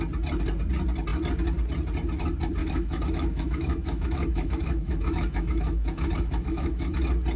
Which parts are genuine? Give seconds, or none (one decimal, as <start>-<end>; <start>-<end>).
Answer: 0.0-2.6; 7.0-7.4